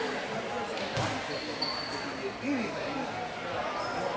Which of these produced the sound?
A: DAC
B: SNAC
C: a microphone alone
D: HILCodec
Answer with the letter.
C